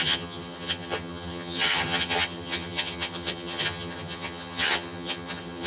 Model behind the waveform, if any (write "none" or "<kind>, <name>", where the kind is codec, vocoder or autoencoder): vocoder, HiFi-GAN